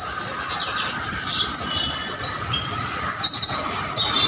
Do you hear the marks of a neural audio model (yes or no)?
no